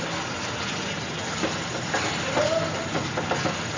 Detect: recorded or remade recorded